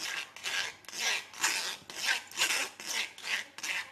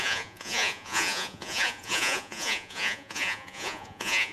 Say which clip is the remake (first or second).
second